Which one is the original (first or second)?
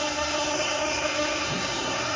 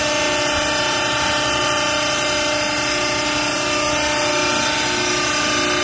second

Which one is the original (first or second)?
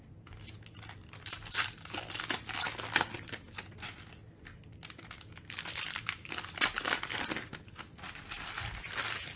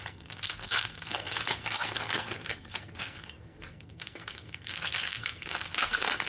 first